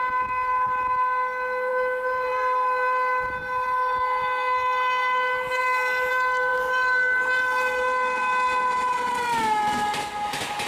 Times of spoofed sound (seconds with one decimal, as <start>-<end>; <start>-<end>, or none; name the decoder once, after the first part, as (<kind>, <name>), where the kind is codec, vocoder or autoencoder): none

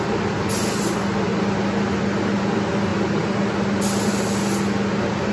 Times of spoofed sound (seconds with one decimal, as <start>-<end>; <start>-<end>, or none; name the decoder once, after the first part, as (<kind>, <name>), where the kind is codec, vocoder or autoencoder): none

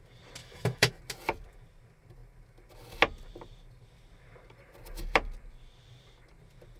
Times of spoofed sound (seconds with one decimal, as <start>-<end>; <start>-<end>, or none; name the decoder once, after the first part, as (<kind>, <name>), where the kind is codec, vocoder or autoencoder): 0.4-1.0 (autoencoder, DAC-VAE)

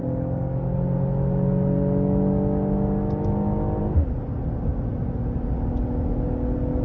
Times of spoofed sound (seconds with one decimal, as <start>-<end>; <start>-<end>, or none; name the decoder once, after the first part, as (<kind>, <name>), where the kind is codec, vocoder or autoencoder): none

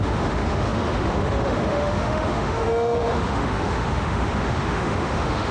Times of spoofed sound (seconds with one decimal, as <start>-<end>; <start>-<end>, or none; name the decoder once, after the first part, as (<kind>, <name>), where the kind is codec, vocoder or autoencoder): 0.0-5.5 (autoencoder, DAC-VAE)

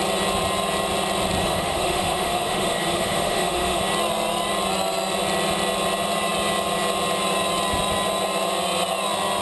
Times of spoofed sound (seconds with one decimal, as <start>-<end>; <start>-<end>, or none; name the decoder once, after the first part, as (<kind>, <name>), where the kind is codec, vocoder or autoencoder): 1.4-3.8 (autoencoder, DAC-VAE)

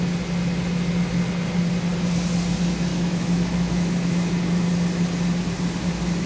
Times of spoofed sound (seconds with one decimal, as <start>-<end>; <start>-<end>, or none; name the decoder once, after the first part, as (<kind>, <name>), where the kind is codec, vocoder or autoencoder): 2.9-4.3 (autoencoder, DAC-VAE)

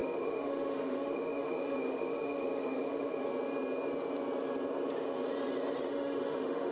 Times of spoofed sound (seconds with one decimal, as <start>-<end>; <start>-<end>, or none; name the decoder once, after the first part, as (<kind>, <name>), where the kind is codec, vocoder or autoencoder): 0.0-3.3 (autoencoder, DAC-VAE); 5.9-6.7